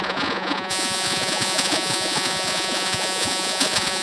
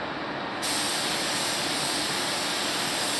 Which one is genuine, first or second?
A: second